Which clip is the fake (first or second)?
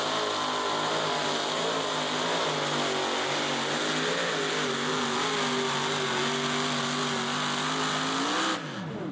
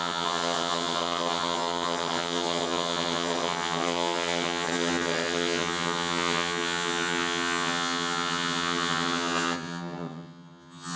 second